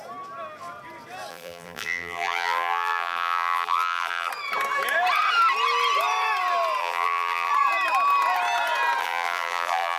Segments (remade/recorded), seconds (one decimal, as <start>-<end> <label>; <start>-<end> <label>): 0.0-1.3 recorded; 1.3-4.3 remade; 4.3-6.8 recorded; 6.8-7.5 remade; 7.5-9.0 recorded; 9.0-10.0 remade